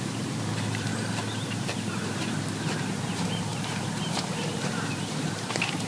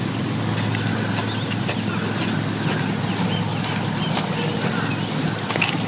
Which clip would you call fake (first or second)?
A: first